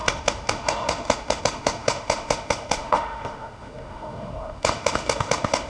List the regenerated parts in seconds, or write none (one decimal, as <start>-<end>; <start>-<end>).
0.0-5.7